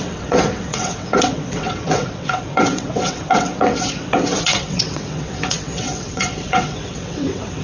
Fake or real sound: fake